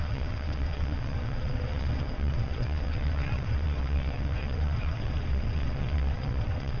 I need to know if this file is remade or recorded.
remade